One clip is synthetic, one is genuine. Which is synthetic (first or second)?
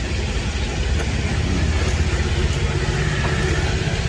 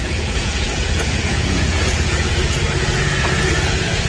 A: second